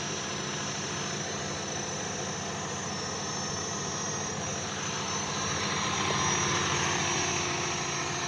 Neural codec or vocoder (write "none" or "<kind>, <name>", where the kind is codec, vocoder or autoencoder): none